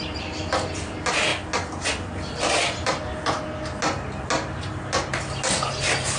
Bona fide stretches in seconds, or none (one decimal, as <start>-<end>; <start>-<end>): 0.0-6.2